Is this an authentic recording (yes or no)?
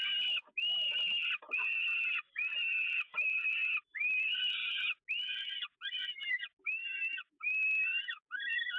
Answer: yes